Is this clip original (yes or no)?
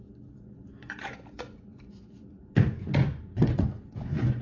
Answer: no